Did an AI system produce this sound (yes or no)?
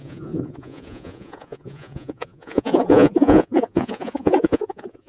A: yes